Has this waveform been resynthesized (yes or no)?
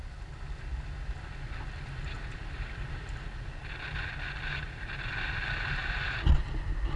no